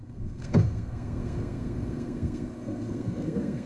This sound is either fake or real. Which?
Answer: fake